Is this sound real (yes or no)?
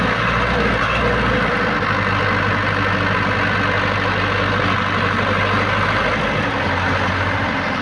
yes